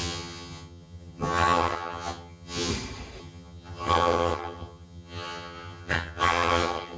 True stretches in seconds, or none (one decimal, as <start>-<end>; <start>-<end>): 2.7-3.2

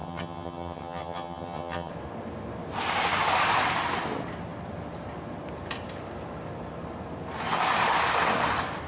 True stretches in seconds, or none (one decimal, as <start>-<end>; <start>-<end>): 1.9-8.9

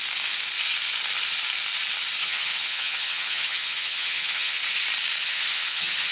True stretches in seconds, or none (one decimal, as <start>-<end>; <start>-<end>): 0.0-2.2; 4.6-5.2